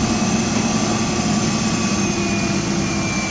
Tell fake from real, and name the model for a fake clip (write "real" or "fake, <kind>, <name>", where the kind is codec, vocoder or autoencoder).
real